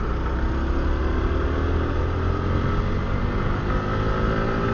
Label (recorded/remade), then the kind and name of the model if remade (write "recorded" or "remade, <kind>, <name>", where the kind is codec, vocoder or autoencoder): recorded